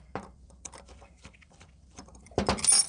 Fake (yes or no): yes